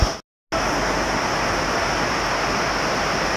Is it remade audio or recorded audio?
recorded